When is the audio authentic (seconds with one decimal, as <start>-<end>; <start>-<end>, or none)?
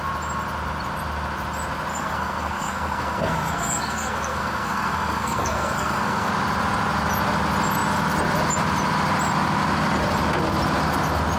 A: 0.0-1.9; 6.3-11.4